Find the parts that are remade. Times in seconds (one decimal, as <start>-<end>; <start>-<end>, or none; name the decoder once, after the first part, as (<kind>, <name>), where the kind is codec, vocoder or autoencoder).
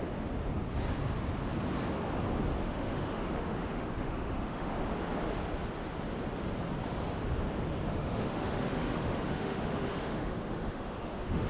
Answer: 2.6-4.8 (autoencoder, DAC-VAE); 7.9-11.5